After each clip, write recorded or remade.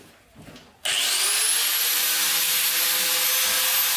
recorded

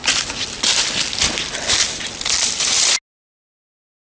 recorded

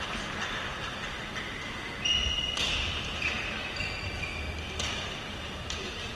recorded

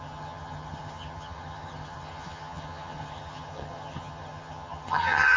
remade